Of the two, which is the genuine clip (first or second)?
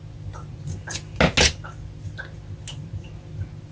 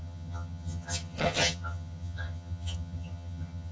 first